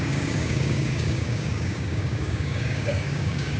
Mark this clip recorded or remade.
remade